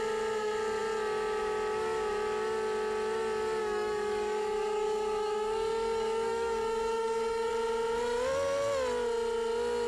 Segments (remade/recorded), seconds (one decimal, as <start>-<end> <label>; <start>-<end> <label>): 0.0-3.6 recorded; 3.6-7.5 remade; 7.5-9.9 recorded